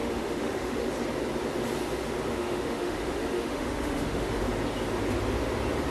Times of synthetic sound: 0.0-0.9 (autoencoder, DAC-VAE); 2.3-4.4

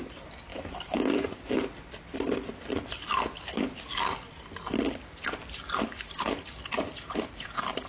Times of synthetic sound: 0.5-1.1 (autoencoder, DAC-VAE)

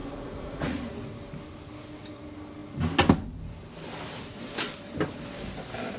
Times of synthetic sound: 0.0-0.9 (vocoder, Vocos)

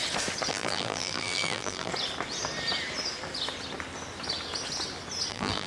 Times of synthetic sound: 0.5-1.9 (vocoder, BigVGAN v2); 5.3-5.7